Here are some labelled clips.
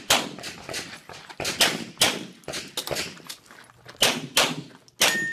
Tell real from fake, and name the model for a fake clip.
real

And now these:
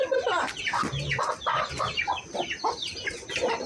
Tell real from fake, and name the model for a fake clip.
real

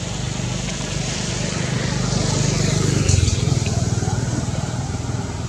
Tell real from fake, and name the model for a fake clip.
real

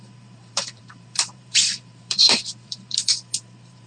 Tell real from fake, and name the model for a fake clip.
fake, vocoder, BigVGAN v2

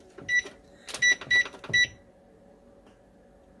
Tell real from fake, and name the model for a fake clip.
real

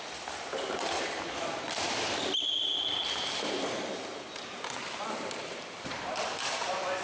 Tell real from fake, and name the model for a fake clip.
fake, vocoder, BigVGAN v2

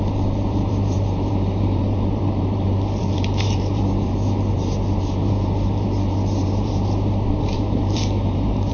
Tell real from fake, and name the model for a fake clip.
fake, vocoder, BigVGAN v2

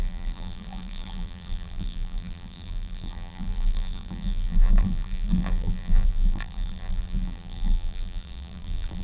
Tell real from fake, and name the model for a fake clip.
fake, vocoder, BigVGAN v2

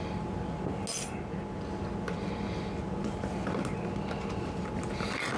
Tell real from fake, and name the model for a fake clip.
real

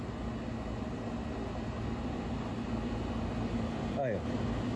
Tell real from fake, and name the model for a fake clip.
real